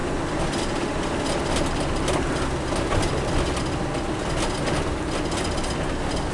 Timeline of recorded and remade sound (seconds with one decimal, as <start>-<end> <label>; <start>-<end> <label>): 0.0-6.3 recorded